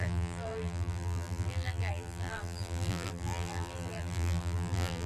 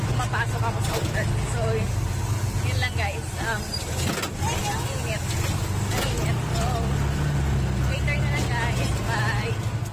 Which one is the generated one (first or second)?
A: first